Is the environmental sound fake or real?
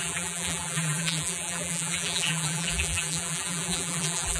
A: fake